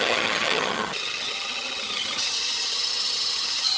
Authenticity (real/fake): fake